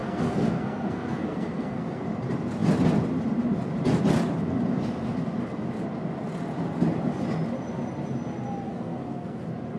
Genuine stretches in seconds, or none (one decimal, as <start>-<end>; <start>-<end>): 2.0-8.7; 9.4-9.8

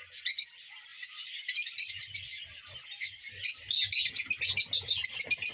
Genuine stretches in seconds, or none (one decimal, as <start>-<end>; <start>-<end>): 0.0-0.9; 2.7-5.5

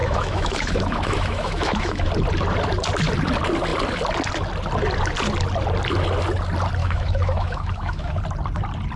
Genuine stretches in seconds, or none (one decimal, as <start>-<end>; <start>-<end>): 2.1-6.8; 8.2-9.0

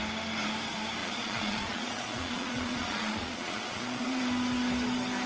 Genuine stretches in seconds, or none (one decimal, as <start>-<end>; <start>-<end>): 0.0-1.0; 4.2-5.3

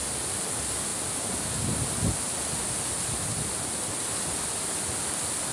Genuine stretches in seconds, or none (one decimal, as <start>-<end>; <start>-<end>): 0.0-5.5